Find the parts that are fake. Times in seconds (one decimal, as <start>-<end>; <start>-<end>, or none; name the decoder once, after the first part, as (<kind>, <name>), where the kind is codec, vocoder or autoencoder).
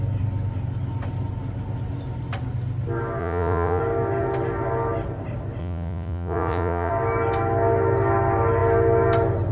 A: 3.2-3.8 (vocoder, Vocos); 5.6-6.9